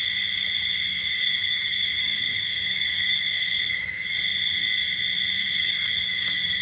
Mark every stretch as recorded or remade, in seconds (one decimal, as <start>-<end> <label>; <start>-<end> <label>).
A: 0.0-0.9 recorded; 0.9-4.2 remade; 4.2-5.4 recorded; 5.4-6.6 remade